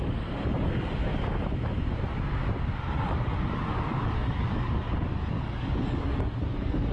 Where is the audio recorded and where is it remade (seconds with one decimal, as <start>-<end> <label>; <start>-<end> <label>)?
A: 0.0-1.1 remade; 1.1-2.8 recorded; 2.8-6.9 remade